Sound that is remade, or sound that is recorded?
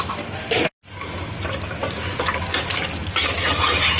recorded